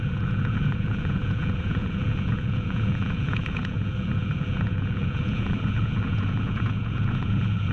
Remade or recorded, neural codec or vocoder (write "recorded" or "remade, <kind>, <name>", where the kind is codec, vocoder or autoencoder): remade, vocoder, Vocos